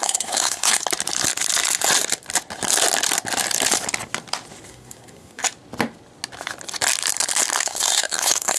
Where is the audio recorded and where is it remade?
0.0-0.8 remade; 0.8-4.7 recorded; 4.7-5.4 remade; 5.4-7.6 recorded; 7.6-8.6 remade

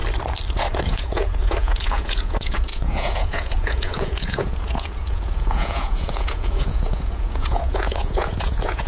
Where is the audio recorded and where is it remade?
0.0-0.8 recorded; 0.8-8.9 remade

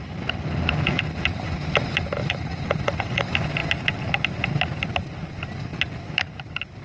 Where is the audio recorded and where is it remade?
0.0-2.2 recorded; 2.2-3.2 remade; 3.2-6.8 recorded

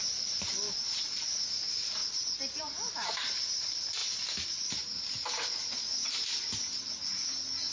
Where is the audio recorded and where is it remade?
0.0-2.0 remade; 2.0-2.6 recorded; 2.6-4.0 remade; 4.0-7.7 recorded

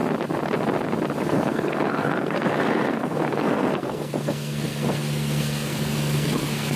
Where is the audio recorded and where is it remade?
0.0-1.2 recorded; 1.2-6.8 remade

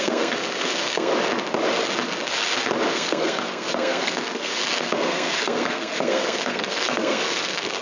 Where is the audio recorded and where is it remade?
0.0-1.1 remade; 1.1-2.9 recorded; 2.9-7.8 remade

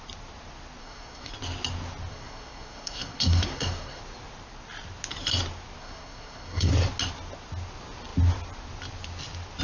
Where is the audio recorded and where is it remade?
0.0-0.8 recorded; 0.8-1.3 remade; 1.3-2.1 recorded; 2.1-4.0 remade; 4.0-5.8 recorded; 5.8-6.7 remade; 6.7-9.6 recorded

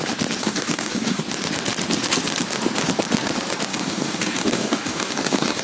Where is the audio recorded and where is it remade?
0.0-0.4 recorded; 0.4-1.2 remade; 1.2-3.7 recorded; 3.7-5.6 remade